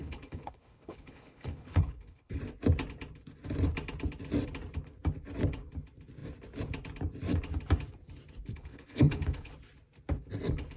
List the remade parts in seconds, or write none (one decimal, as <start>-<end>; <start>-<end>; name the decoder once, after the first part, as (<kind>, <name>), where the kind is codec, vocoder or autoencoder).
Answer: 0.0-2.4 (codec, HILCodec); 8.5-9.5